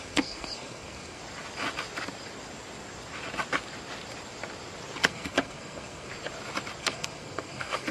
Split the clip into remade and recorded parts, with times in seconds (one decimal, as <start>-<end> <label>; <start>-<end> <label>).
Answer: 0.0-1.2 remade; 1.2-5.0 recorded; 5.0-6.1 remade; 6.1-6.8 recorded; 6.8-7.9 remade